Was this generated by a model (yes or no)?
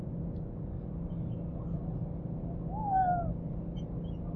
no